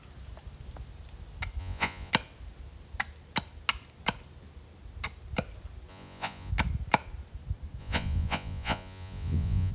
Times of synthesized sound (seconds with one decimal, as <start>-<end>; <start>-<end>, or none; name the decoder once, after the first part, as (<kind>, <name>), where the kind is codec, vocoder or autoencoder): 1.6-2.1 (vocoder, Vocos); 5.9-6.5; 7.8-9.7